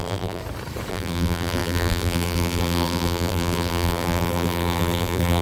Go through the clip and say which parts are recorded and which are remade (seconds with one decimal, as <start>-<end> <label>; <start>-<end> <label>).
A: 0.0-0.4 remade; 0.4-0.9 recorded; 0.9-5.4 remade